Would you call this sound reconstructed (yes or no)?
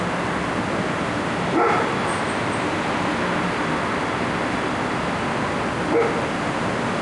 no